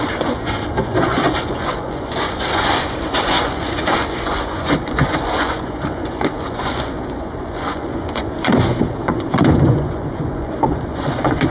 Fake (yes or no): yes